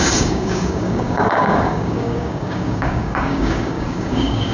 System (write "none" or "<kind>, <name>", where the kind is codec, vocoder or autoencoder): codec, DAC